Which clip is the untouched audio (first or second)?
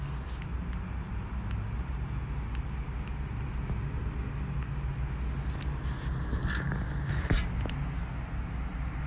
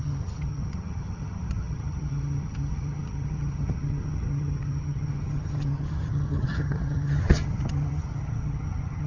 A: first